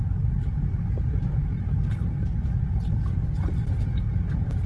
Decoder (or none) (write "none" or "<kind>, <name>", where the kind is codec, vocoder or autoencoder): none